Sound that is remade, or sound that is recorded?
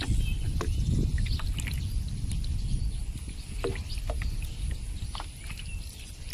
recorded